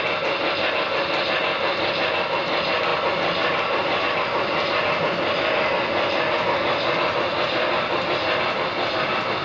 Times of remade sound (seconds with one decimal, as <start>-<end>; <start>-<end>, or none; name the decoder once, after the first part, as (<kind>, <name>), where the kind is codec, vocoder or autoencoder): none